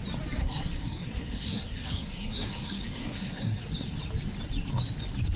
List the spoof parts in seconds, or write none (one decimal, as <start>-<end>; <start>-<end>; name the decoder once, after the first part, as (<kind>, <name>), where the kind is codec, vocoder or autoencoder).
0.4-3.6 (codec, SNAC)